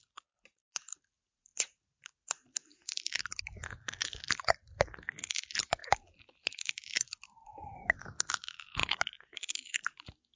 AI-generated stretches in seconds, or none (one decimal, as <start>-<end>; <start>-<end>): none